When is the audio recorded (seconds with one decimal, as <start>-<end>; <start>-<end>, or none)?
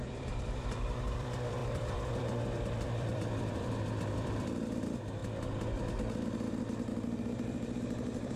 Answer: 5.2-6.6